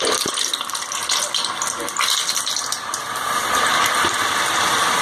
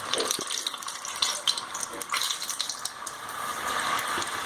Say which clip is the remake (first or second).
first